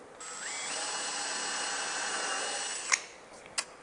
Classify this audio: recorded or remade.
recorded